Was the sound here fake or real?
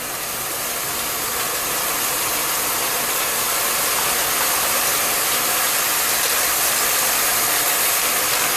real